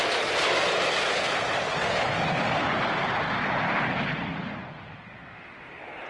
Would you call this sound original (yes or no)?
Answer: yes